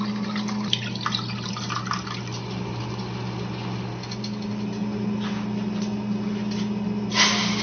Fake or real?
real